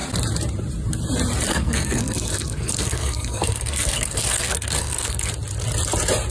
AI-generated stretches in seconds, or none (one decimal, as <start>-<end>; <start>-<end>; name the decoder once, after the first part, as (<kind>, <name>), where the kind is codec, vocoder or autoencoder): 1.5-5.3 (codec, SNAC)